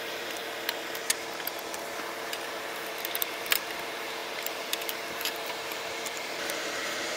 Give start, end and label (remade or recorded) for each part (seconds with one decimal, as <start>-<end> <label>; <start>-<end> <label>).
0.0-0.4 remade; 0.4-2.4 recorded; 2.4-7.2 remade